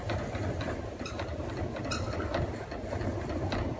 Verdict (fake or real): real